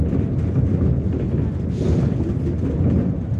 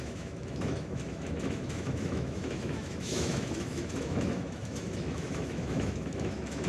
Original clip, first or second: first